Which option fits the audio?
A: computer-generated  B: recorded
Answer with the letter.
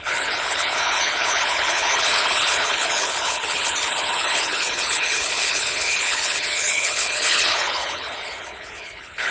A